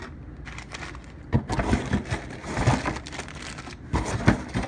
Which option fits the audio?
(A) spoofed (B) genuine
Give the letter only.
B